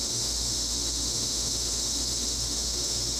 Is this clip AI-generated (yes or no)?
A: yes